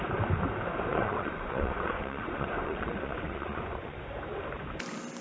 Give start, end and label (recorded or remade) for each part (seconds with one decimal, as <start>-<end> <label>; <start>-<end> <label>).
0.0-0.9 recorded; 0.9-4.0 remade; 4.0-5.2 recorded